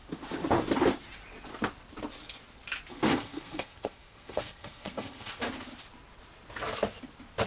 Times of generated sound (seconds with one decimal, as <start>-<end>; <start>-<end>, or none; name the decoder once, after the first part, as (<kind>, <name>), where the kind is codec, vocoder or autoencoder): 2.9-5.4 (codec, SNAC)